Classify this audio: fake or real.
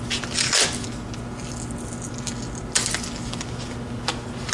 real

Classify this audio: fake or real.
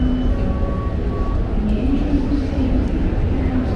real